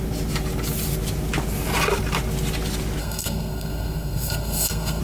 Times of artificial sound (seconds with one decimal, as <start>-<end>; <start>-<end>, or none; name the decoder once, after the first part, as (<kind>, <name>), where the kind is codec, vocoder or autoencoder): 3.0-5.0 (codec, SNAC)